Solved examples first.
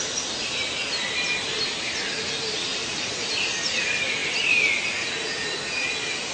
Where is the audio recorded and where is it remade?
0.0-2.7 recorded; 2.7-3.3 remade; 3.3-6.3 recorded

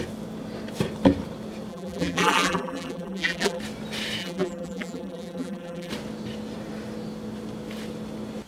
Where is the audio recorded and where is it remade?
0.0-1.7 recorded; 1.7-3.6 remade; 3.6-4.2 recorded; 4.2-5.9 remade; 5.9-8.5 recorded